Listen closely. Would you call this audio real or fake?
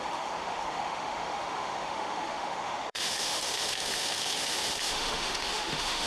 fake